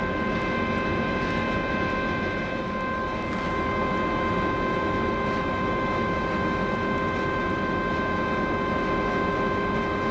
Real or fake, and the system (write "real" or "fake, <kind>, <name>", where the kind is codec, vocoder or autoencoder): real